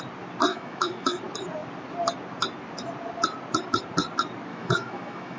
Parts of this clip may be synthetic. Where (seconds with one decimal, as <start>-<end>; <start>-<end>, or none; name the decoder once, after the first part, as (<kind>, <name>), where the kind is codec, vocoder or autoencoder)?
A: 0.5-1.2 (autoencoder, DAC-VAE); 4.5-5.4

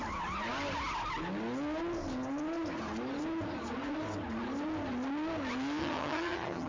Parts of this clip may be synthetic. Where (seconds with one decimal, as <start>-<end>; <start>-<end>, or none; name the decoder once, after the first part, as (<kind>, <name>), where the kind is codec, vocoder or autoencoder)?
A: 5.8-6.7 (vocoder, HiFi-GAN)

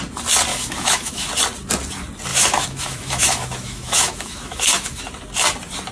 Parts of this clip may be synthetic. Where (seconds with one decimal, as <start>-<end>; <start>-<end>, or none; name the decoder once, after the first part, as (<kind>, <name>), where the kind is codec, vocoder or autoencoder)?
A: 0.5-1.3 (autoencoder, DAC-VAE); 2.3-5.0

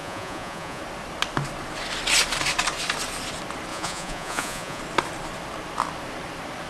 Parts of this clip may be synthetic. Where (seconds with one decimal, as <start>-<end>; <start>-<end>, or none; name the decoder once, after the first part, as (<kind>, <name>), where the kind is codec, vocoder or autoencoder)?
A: 0.0-0.8 (vocoder, Vocos); 3.7-4.8

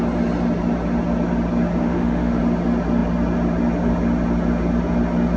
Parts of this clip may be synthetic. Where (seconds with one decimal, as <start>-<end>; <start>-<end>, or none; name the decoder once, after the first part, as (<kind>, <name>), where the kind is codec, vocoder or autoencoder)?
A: 1.8-2.4 (autoencoder, DAC-VAE)

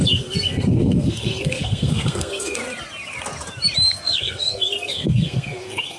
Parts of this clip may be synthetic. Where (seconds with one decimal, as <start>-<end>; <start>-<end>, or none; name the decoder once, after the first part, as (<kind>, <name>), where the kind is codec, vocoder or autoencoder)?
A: 0.0-2.6 (codec, SNAC); 3.9-6.0

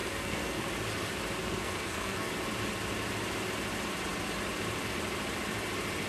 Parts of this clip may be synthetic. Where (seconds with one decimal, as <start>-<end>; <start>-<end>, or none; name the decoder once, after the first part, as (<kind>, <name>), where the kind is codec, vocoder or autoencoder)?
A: 0.0-0.6 (codec, SNAC); 1.4-2.3

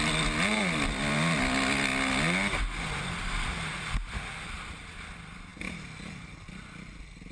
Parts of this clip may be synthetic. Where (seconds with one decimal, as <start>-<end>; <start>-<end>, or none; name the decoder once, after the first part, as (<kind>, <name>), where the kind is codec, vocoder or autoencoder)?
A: none